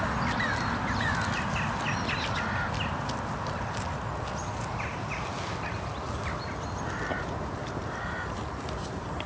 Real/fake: real